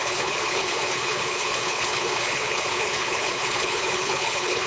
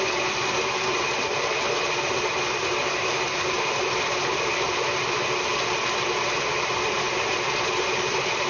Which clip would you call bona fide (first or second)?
second